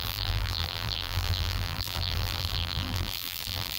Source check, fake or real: fake